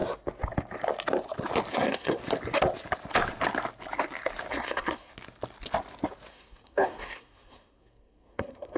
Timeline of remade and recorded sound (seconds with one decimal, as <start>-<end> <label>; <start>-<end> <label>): 0.0-1.7 recorded; 1.7-2.2 remade; 2.2-4.5 recorded; 4.5-5.1 remade; 5.1-6.3 recorded; 6.3-8.8 remade